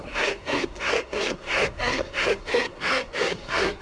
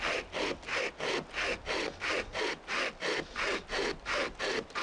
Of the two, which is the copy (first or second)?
first